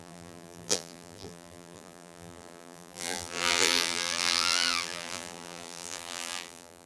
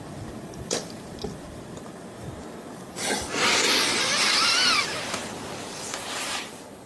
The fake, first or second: first